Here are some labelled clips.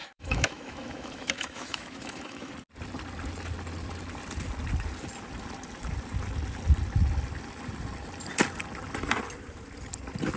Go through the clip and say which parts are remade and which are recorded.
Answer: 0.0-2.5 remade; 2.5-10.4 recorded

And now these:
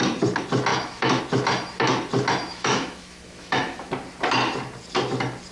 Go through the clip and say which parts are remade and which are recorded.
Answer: 0.0-0.7 recorded; 0.7-1.2 remade; 1.2-2.5 recorded; 2.5-3.9 remade; 3.9-5.5 recorded

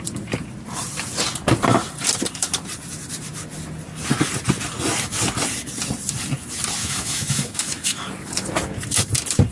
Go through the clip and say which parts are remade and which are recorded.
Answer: 0.0-6.8 recorded; 6.8-8.0 remade; 8.0-9.5 recorded

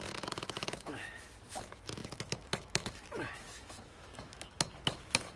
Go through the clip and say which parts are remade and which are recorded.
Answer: 0.0-5.4 remade